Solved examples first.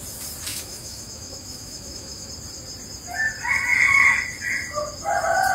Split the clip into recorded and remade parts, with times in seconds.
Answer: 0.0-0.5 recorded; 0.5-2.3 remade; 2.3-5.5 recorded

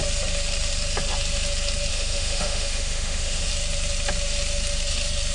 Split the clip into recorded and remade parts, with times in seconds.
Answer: 0.0-1.9 recorded; 1.9-3.5 remade; 3.5-5.3 recorded

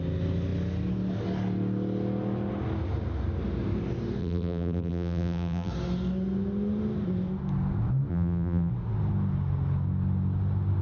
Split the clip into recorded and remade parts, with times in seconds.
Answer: 0.0-4.2 recorded; 4.2-5.7 remade; 5.7-8.1 recorded; 8.1-8.7 remade; 8.7-10.8 recorded

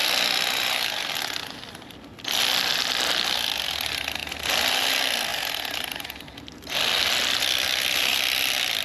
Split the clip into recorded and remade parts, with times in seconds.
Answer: 0.0-8.8 recorded

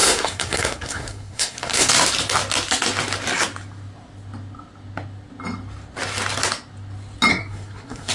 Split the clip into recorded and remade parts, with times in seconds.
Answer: 0.0-1.9 remade; 1.9-7.3 recorded; 7.3-8.1 remade

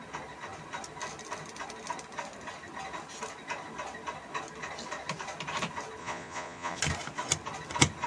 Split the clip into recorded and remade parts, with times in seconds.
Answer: 0.0-6.0 recorded; 6.0-6.8 remade; 6.8-8.1 recorded

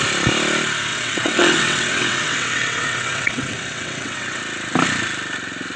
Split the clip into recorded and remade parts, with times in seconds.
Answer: 0.0-0.9 recorded; 0.9-4.4 remade; 4.4-5.8 recorded